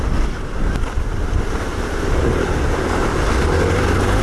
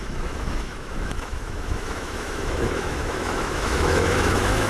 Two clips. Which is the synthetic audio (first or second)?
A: second